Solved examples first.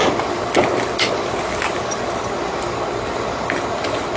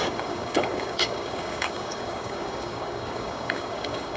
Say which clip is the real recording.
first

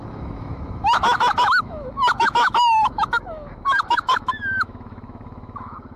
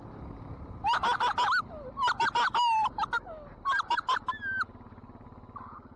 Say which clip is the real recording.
second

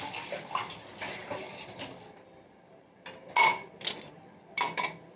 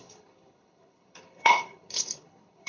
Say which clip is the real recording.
first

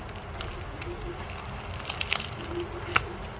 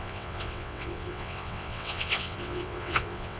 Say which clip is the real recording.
first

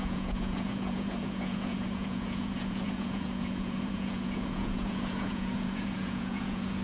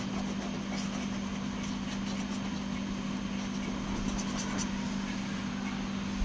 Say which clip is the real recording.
second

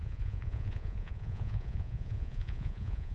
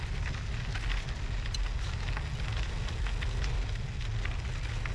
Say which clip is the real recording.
second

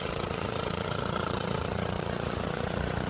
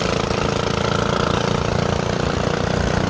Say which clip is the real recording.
second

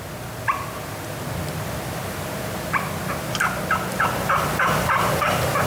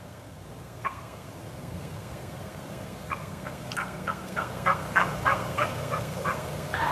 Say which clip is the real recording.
first